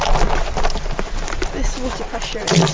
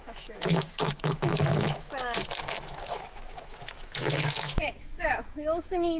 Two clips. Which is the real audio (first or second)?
first